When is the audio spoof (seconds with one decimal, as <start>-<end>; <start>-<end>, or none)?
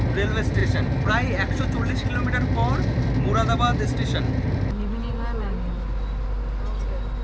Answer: none